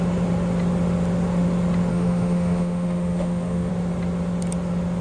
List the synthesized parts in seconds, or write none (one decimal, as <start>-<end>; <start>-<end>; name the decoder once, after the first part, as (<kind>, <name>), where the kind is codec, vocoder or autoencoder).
1.9-3.7 (autoencoder, DAC-VAE)